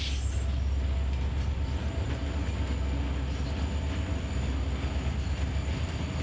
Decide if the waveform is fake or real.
real